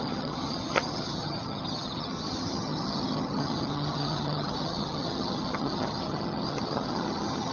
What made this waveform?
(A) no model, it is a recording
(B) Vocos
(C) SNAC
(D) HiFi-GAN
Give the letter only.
D